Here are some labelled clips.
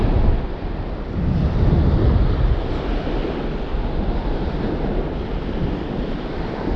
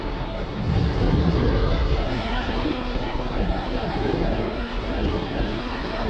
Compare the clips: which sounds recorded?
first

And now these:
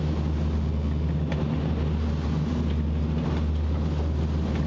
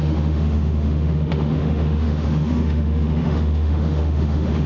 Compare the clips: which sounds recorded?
first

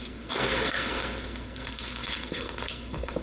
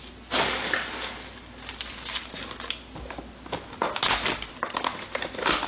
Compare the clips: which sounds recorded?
second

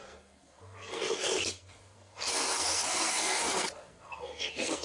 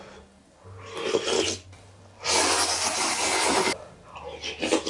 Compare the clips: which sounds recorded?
second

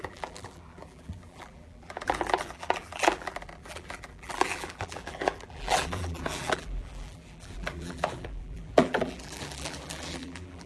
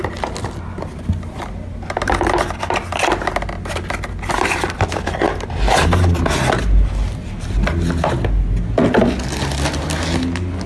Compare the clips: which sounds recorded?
second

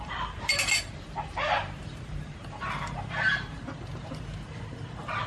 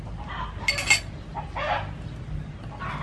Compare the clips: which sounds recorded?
second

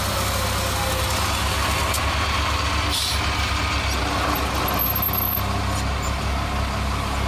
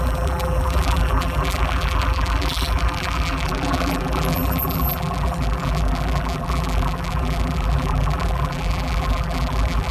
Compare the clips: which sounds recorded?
first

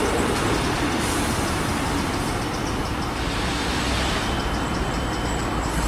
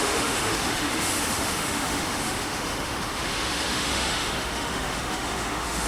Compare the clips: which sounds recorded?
first